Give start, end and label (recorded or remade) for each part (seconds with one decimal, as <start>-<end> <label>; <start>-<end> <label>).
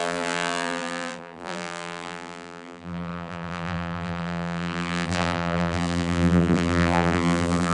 0.0-7.7 remade